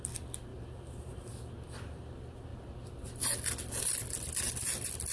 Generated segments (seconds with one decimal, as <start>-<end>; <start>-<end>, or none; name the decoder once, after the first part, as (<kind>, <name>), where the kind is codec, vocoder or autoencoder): 0.5-1.3 (vocoder, BigVGAN v2)